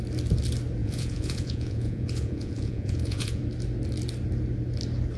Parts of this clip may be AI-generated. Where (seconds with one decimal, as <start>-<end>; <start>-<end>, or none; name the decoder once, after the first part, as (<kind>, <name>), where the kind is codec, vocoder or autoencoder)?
0.8-3.4 (vocoder, Vocos)